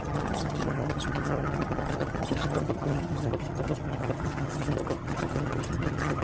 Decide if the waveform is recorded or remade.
remade